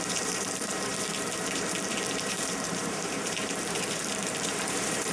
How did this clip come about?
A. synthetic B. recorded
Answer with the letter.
A